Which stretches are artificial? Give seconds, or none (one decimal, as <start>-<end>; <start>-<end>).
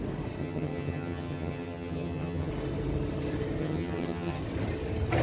0.4-2.5; 3.6-4.4